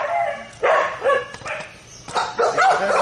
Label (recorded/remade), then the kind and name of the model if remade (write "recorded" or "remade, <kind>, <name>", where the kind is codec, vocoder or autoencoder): remade, vocoder, BigVGAN v2